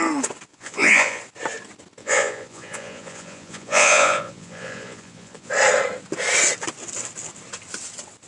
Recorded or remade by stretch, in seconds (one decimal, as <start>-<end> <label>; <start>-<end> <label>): 0.0-0.5 recorded; 0.5-1.2 remade; 1.2-2.0 recorded; 2.0-5.5 remade; 5.5-8.3 recorded